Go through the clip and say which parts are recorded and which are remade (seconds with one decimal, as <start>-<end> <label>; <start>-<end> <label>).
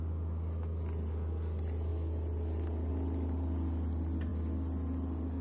0.0-5.4 recorded